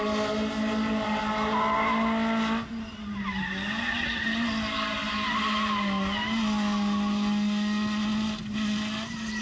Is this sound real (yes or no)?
yes